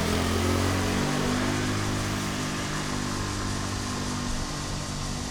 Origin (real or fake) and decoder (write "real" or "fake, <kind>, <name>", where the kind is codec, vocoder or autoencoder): real